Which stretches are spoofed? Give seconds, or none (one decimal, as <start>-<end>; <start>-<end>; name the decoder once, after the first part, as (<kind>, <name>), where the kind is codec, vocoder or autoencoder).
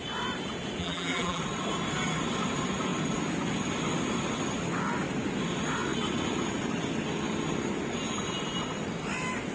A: 0.8-1.4 (vocoder, BigVGAN v2)